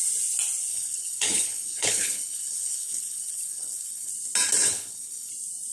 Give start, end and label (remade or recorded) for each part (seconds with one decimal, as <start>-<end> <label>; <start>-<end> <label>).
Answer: 0.0-0.7 recorded; 0.7-4.1 remade; 4.1-4.6 recorded; 4.6-5.3 remade; 5.3-5.7 recorded